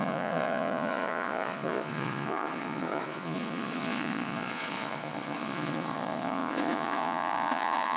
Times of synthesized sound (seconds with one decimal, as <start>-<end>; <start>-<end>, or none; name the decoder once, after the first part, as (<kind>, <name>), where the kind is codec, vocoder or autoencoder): 0.0-8.0 (vocoder, Vocos)